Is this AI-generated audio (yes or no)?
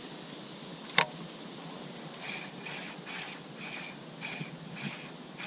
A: yes